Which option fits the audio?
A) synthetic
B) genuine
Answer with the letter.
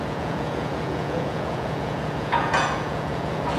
A